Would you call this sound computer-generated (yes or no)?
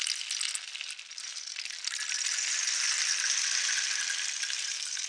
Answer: no